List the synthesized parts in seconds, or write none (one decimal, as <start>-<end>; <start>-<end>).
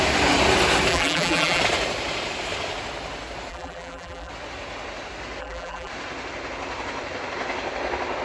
0.9-1.6; 3.5-4.3; 5.4-5.9